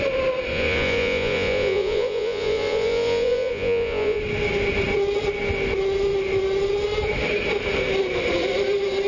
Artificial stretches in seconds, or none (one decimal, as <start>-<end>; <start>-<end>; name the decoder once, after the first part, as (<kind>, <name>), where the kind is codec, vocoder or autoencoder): 0.5-4.2 (vocoder, Vocos)